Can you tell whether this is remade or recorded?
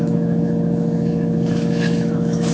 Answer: remade